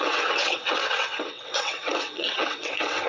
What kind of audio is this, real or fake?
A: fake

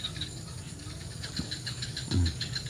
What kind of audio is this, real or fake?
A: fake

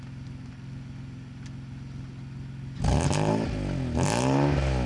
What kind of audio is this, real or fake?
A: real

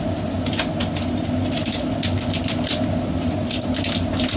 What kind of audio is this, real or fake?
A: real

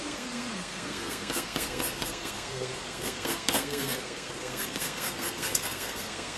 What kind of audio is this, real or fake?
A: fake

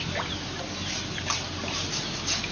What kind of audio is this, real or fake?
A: real